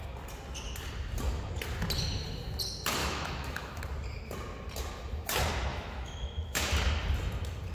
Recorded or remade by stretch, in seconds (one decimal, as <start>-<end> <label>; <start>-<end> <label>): 0.0-3.0 recorded; 3.0-3.8 remade; 3.8-5.7 recorded; 5.7-6.6 remade; 6.6-7.7 recorded